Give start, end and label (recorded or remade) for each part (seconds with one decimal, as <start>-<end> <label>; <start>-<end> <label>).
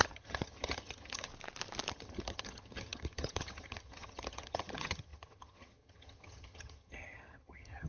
0.0-1.3 remade; 1.3-1.9 recorded; 1.9-7.9 remade